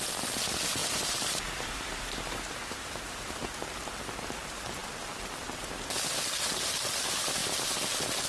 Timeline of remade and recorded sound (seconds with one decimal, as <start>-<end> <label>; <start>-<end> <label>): 0.0-0.8 recorded; 0.8-3.5 remade; 3.5-8.3 recorded